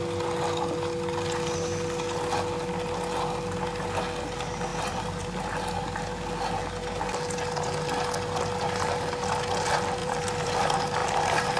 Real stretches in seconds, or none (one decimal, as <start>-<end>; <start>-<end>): 0.0-4.7; 5.2-10.0; 10.6-11.0